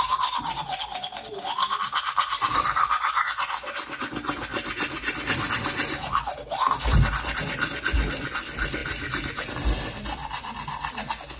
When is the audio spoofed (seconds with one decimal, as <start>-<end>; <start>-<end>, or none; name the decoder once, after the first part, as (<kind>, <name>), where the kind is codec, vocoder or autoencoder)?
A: none

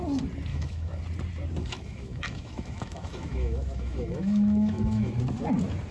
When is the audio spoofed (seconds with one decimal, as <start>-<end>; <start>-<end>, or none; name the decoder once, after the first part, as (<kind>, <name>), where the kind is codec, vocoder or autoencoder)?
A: 0.5-1.0 (autoencoder, DAC-VAE); 1.6-5.1

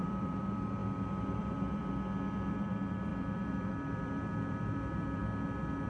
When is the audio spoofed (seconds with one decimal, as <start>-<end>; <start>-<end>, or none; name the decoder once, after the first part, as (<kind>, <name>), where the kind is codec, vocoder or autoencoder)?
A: 0.0-1.8 (vocoder, BigVGAN v2); 2.5-5.2

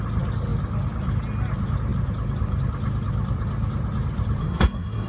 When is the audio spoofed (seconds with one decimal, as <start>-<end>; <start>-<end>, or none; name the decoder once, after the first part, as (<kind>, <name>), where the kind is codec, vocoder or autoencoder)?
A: 4.4-5.1 (codec, SNAC)

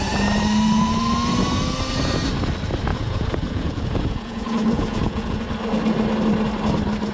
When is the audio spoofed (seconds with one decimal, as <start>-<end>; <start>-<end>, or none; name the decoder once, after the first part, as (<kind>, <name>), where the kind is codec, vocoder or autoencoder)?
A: 2.9-5.5 (vocoder, Vocos)